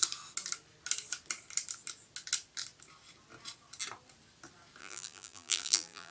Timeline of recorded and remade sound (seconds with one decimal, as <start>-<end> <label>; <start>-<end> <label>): 0.0-4.8 recorded; 4.8-6.1 remade